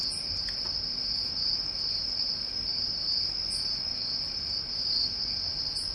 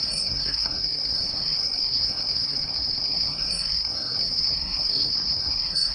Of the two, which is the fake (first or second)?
second